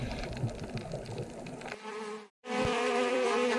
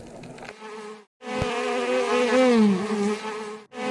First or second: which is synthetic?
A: first